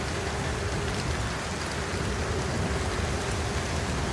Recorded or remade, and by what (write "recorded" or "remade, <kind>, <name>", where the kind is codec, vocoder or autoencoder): recorded